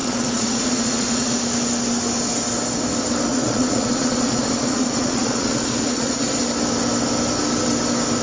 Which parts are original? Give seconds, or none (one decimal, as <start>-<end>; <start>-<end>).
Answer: 1.4-3.3; 6.4-8.2